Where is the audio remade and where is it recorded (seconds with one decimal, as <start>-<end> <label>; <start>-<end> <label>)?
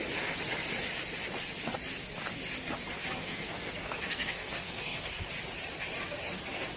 0.0-3.2 recorded; 3.2-5.3 remade; 5.3-6.8 recorded